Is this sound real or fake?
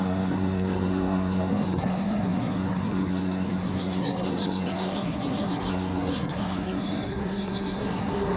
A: fake